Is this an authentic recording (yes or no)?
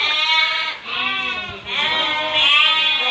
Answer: yes